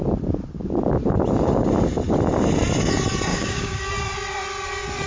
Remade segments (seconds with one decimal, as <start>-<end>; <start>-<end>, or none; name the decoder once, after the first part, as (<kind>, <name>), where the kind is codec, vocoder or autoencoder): 3.3-3.8 (codec, DAC)